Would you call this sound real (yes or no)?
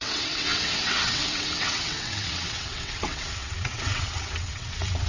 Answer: no